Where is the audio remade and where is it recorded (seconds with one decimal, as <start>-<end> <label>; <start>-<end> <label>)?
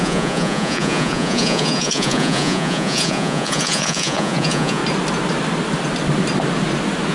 0.0-4.8 remade; 4.8-7.1 recorded